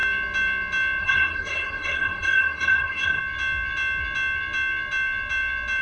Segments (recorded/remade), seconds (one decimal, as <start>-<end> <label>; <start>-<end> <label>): 0.0-1.0 recorded; 1.0-3.2 remade; 3.2-5.8 recorded